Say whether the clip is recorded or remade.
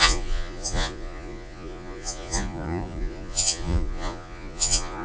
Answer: remade